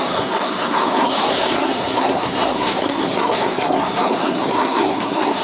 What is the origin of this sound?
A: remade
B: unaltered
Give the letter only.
A